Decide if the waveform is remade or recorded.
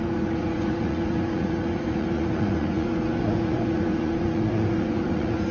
remade